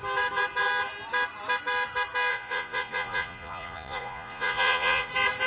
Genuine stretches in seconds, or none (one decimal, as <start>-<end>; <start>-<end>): 0.0-2.3; 5.1-5.5